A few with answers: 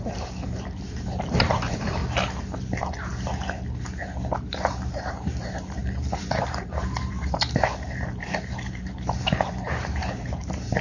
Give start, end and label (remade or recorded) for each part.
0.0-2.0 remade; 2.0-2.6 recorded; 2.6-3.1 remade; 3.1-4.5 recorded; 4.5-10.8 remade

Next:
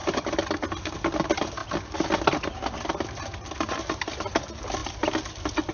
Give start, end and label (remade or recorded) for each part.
0.0-5.7 recorded

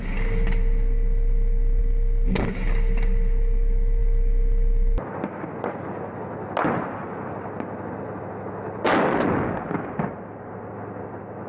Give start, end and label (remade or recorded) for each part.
0.0-11.5 recorded

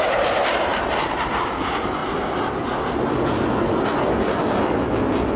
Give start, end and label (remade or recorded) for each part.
0.0-2.0 remade; 2.0-5.4 recorded